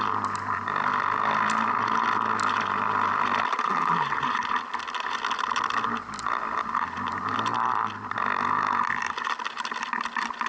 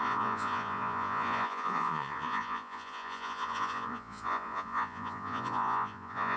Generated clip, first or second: second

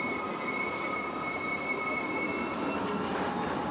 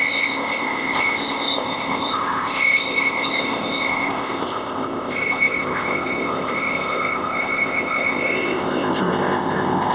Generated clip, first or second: second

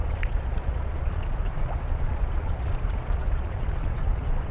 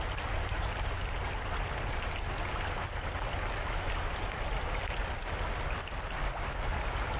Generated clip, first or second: first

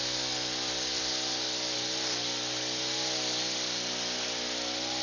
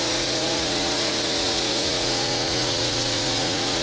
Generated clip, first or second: second